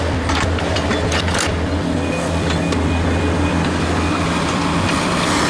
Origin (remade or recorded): recorded